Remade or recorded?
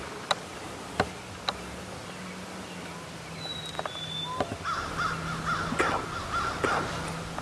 recorded